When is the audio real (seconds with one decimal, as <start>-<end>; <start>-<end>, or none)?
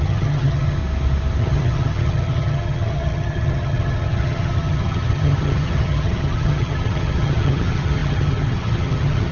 0.8-1.4